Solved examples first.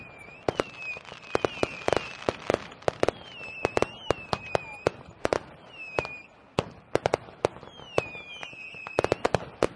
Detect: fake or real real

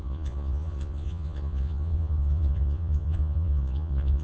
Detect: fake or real fake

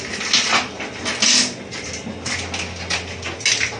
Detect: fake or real real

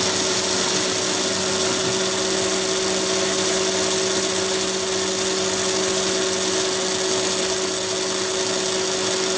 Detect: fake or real real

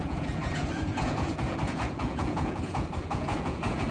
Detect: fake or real fake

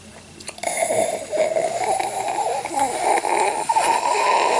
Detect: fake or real real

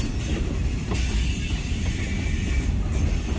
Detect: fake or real real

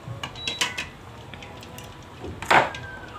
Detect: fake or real real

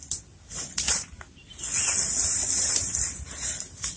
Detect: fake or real real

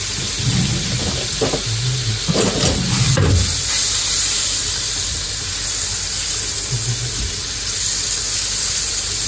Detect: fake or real real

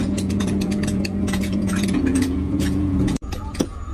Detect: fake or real fake